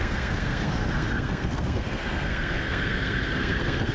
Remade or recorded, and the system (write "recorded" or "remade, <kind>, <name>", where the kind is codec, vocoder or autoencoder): remade, codec, SNAC